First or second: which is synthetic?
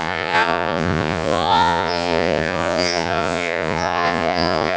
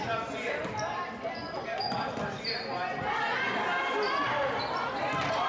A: first